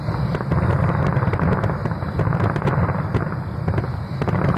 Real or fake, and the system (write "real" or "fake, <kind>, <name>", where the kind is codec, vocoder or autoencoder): real